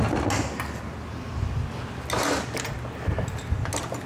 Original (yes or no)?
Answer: yes